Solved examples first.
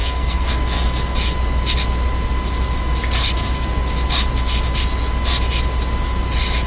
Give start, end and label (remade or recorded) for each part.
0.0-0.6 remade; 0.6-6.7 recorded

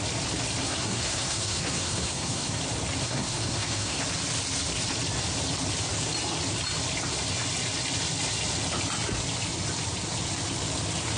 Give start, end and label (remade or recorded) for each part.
0.0-0.6 recorded; 0.6-2.6 remade; 2.6-3.0 recorded; 3.0-4.0 remade; 4.0-11.2 recorded

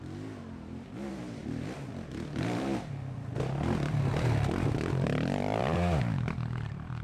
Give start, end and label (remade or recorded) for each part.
0.0-7.0 recorded

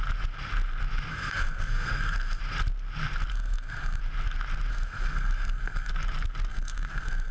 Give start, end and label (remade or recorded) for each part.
0.0-1.1 recorded; 1.1-2.4 remade; 2.4-3.3 recorded; 3.3-4.0 remade; 4.0-4.7 recorded; 4.7-5.9 remade; 5.9-6.5 recorded; 6.5-7.3 remade

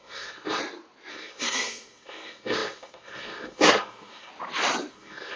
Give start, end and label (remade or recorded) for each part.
0.0-0.6 remade; 0.6-1.1 recorded; 1.1-4.3 remade; 4.3-4.9 recorded; 4.9-5.4 remade

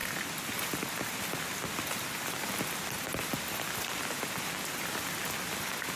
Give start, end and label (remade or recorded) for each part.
0.0-6.0 recorded

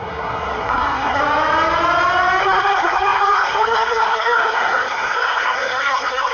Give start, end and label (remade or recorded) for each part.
0.0-1.2 remade; 1.2-2.4 recorded; 2.4-6.3 remade

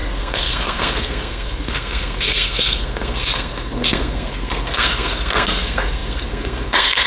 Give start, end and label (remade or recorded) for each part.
0.0-7.1 remade